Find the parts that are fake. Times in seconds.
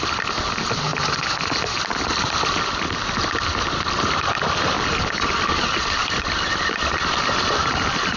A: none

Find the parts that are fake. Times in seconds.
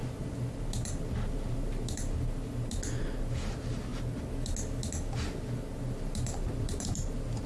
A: 0.0-3.9 (vocoder, BigVGAN v2); 5.7-7.5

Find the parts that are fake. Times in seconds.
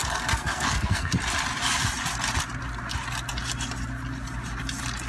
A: 0.0-1.1 (codec, SNAC)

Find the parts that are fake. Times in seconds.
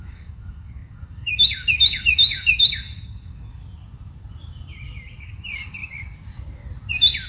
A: 0.0-3.6 (codec, DAC); 5.2-5.8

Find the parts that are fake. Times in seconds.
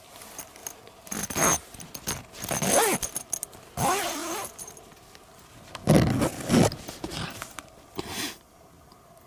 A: none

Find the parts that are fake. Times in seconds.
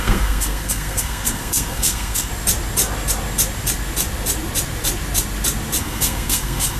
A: 0.0-2.3 (codec, SNAC); 5.8-6.8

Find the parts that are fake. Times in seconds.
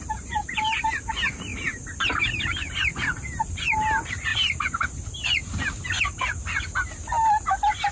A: none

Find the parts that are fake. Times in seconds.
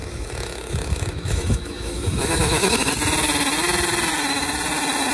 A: 0.0-2.9 (autoencoder, DAC-VAE)